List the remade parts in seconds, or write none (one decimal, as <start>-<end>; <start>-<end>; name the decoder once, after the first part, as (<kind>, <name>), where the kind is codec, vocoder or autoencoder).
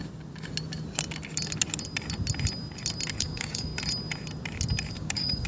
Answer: 3.2-3.7 (codec, DAC); 4.9-5.5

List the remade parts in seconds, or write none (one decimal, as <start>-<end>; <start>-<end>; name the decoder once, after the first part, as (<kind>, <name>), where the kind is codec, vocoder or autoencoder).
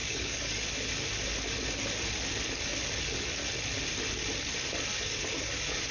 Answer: 0.0-0.6 (codec, DAC); 4.9-5.9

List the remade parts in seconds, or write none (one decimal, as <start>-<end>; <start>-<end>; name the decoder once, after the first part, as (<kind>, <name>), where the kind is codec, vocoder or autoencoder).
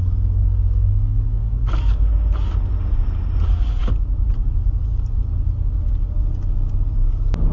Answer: 0.4-2.1 (codec, DAC)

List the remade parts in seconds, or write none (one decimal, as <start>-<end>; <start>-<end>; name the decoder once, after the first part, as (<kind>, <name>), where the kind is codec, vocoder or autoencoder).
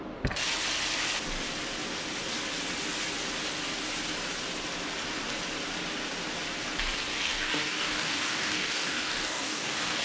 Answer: 7.1-10.0 (codec, DAC)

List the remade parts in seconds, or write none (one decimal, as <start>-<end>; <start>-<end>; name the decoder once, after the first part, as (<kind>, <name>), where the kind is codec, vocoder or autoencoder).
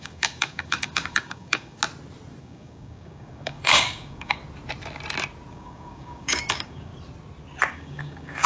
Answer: 0.0-1.8 (codec, DAC); 2.4-4.4; 5.5-6.9; 7.7-8.5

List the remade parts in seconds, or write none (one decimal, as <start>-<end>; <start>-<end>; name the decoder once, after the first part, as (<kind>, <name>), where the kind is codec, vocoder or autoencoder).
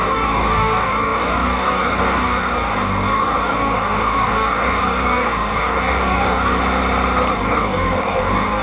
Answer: 0.0-6.6 (codec, DAC); 7.4-8.6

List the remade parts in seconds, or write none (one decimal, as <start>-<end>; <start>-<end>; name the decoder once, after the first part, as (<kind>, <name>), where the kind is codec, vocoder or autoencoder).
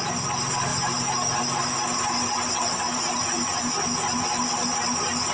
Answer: none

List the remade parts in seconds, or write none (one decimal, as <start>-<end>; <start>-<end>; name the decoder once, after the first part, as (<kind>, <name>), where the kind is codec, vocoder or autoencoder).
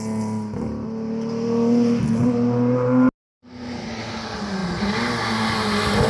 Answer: none